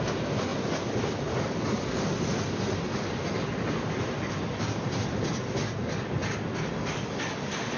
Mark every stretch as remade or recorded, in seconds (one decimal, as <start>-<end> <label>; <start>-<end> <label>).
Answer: 0.0-6.2 remade; 6.2-6.7 recorded; 6.7-7.8 remade